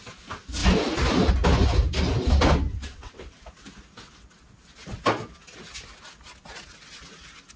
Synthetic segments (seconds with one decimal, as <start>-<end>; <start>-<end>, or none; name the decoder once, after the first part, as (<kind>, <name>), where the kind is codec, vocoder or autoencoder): 2.7-3.4 (vocoder, WaveNeXt)